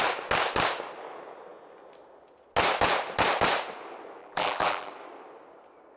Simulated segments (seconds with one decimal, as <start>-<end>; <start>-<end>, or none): 4.2-4.9